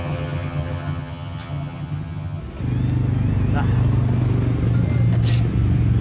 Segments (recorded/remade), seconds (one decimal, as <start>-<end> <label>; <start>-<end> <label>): 0.0-2.4 remade; 2.4-6.0 recorded